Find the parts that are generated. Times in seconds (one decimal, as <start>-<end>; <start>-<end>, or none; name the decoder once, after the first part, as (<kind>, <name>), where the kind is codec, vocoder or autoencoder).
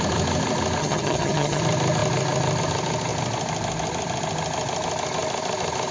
0.8-1.6 (vocoder, HiFi-GAN)